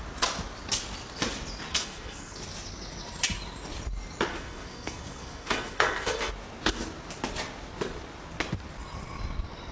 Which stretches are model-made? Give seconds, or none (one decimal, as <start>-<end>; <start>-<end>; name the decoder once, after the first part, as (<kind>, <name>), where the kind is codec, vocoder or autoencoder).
1.7-2.4 (codec, SNAC); 4.3-6.3